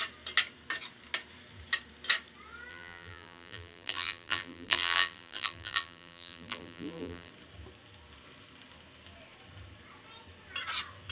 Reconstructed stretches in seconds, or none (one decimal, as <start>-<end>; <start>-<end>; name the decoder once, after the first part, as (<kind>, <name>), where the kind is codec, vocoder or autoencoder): 2.7-7.3 (vocoder, BigVGAN v2)